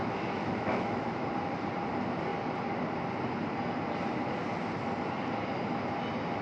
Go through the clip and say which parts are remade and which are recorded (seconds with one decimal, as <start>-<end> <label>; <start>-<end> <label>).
0.0-1.3 remade; 1.3-6.4 recorded